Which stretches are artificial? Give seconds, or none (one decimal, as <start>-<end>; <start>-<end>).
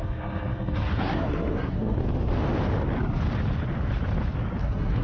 0.0-2.0; 4.6-5.0